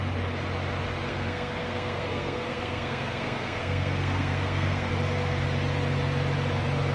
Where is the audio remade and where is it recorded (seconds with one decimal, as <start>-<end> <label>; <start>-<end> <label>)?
0.0-1.1 recorded; 1.1-4.9 remade; 4.9-6.9 recorded